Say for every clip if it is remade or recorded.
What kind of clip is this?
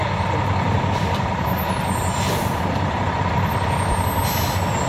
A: recorded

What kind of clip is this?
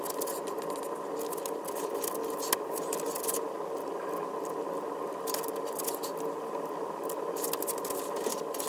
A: recorded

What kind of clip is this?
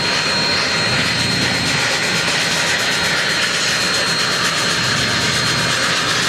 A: recorded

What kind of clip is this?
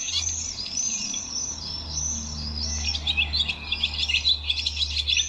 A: recorded